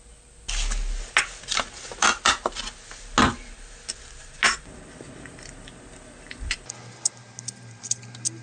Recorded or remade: recorded